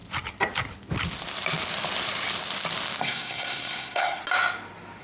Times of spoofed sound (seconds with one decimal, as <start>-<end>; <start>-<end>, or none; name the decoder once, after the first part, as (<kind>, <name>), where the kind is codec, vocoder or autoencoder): 3.0-4.2 (codec, SNAC)